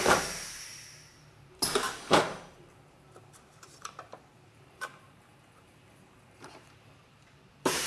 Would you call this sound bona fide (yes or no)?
no